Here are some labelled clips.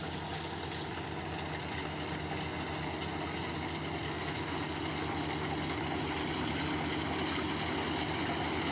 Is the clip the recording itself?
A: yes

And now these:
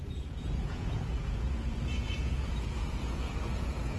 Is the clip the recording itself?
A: no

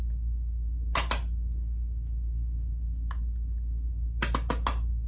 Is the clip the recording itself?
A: yes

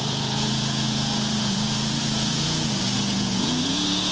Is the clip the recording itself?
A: no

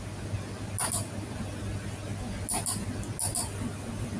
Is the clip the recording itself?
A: yes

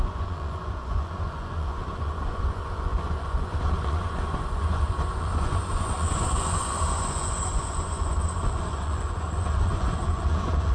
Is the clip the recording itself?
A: no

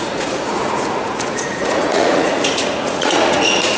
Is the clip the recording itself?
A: no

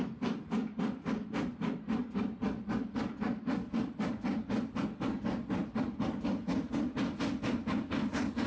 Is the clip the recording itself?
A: yes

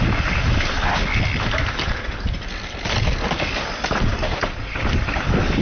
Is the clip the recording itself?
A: yes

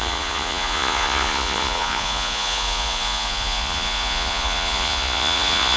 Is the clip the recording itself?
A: no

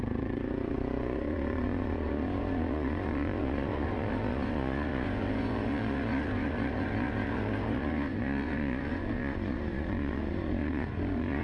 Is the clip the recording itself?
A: no